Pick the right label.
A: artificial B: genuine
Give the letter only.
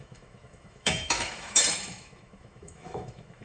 A